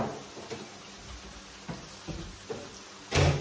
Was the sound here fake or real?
real